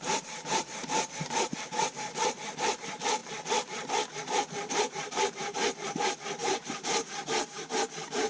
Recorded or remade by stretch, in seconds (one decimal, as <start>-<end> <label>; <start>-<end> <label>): 0.0-3.2 remade; 3.2-4.2 recorded; 4.2-8.3 remade